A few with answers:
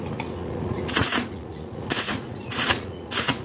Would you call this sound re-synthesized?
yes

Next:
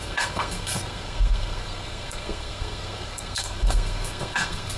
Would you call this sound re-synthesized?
yes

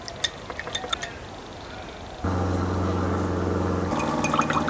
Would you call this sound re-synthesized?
no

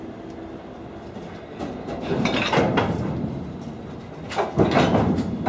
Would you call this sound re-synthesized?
no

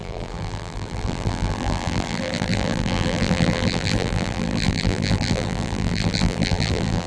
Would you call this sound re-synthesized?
yes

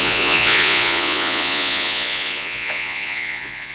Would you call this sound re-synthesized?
yes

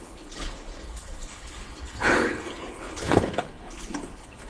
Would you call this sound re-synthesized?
yes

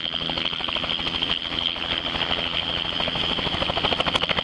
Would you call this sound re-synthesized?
no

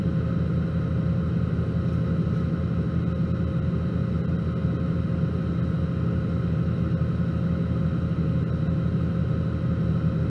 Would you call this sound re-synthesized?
no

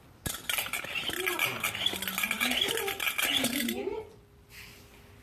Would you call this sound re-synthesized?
no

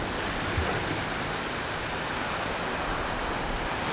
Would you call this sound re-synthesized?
no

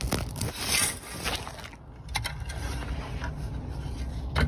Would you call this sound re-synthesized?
no